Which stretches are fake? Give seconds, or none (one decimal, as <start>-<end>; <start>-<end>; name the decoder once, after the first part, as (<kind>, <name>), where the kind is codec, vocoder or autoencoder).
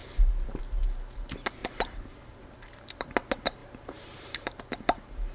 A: 0.0-0.6 (vocoder, BigVGAN v2); 1.6-2.3; 3.6-4.6